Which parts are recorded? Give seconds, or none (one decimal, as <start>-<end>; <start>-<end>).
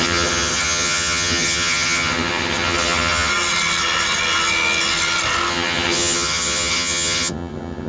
3.3-5.5